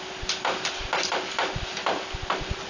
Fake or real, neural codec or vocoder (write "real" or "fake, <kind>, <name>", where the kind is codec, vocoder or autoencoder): fake, vocoder, BigVGAN v2